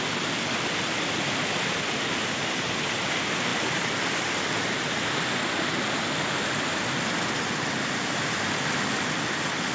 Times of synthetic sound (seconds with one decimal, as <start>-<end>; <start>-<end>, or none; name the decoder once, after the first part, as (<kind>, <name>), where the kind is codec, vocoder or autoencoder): none